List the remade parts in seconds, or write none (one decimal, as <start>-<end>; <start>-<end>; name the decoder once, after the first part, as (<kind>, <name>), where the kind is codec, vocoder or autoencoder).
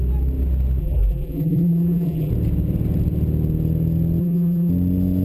0.8-2.3 (vocoder, BigVGAN v2); 4.2-4.7